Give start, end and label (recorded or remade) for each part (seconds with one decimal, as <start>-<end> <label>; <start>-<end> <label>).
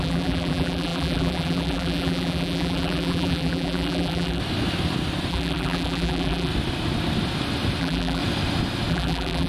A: 0.0-4.4 remade; 4.4-5.3 recorded; 5.3-6.5 remade; 6.5-7.8 recorded; 7.8-8.2 remade; 8.2-8.9 recorded; 8.9-9.5 remade